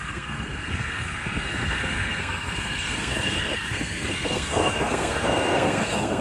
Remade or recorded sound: remade